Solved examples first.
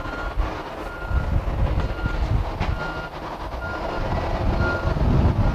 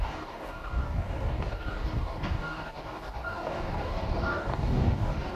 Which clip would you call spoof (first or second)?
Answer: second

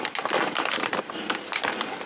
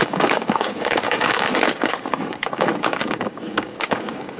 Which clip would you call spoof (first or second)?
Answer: second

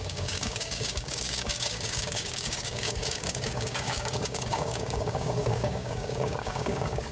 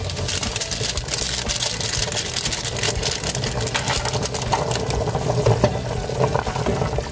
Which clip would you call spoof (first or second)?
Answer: first